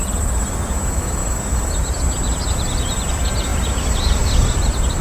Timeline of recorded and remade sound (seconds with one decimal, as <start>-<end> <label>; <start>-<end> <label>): 0.0-5.0 recorded